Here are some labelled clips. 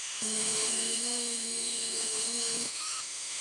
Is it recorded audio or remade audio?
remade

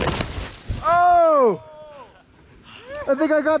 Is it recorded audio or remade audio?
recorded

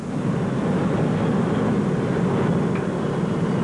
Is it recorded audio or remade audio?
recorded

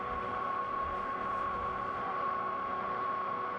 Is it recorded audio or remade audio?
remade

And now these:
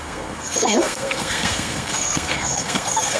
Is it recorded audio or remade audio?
remade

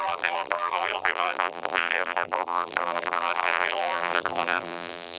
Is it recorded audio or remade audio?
remade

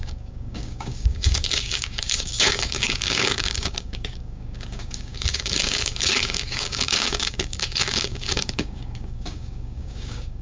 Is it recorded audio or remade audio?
remade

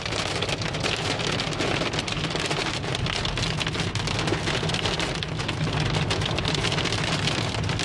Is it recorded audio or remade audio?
recorded